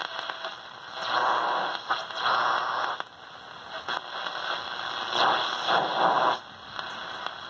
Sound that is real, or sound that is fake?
real